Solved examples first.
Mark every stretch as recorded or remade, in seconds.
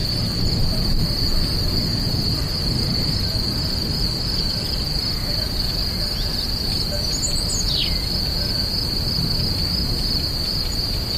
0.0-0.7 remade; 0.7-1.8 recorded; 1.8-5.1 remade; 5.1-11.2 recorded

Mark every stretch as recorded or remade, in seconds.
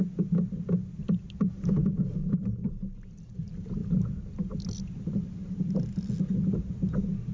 0.0-7.3 recorded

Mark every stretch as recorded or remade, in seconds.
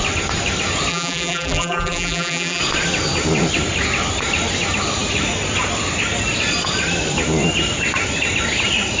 0.0-0.9 recorded; 0.9-2.6 remade; 2.6-9.0 recorded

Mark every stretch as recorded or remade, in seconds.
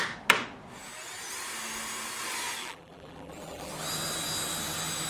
0.0-2.6 recorded; 2.6-3.7 remade; 3.7-5.1 recorded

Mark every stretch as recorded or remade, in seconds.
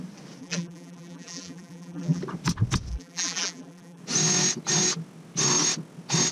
0.0-0.4 recorded; 0.4-2.2 remade; 2.2-2.9 recorded; 2.9-4.0 remade; 4.0-6.3 recorded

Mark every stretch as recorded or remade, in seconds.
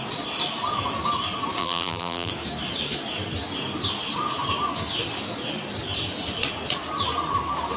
0.0-1.6 recorded; 1.6-2.3 remade; 2.3-7.8 recorded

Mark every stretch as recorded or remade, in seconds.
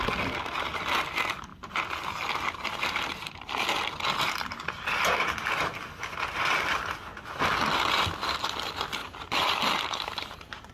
0.0-9.0 recorded; 9.0-10.7 remade